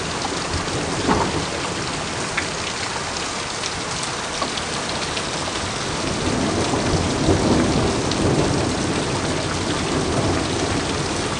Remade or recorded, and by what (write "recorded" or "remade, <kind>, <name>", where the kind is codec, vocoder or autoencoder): recorded